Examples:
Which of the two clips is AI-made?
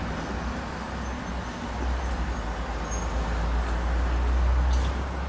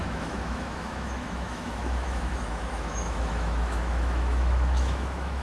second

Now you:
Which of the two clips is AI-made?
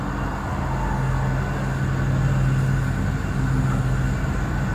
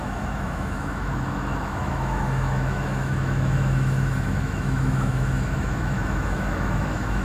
second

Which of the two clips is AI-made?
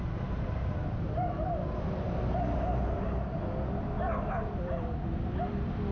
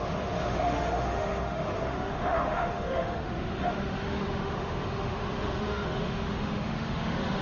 second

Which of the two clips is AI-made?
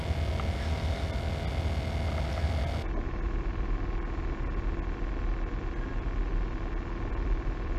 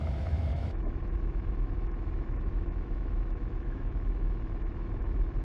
second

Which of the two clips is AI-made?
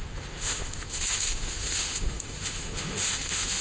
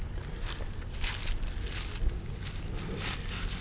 first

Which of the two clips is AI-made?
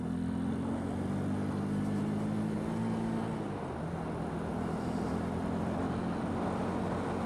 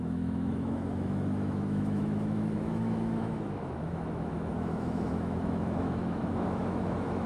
second